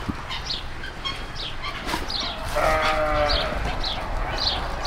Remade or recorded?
recorded